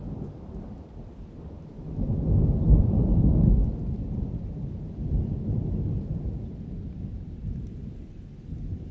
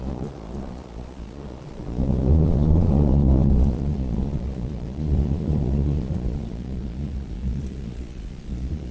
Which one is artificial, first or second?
second